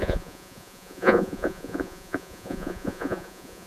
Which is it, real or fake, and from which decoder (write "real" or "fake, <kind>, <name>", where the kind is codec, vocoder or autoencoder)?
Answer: fake, vocoder, Vocos